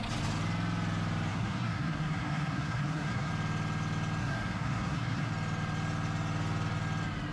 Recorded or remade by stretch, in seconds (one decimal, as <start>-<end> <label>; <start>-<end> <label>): 0.0-1.3 recorded; 1.3-3.3 remade; 3.3-4.2 recorded; 4.2-5.3 remade; 5.3-7.3 recorded